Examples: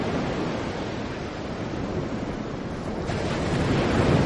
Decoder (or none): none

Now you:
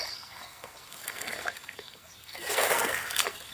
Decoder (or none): codec, SNAC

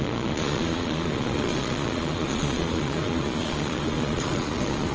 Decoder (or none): vocoder, Vocos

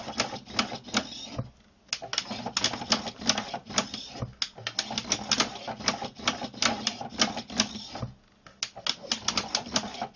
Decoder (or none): none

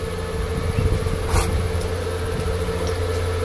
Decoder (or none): none